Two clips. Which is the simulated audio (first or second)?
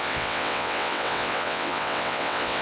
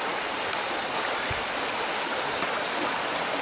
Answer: first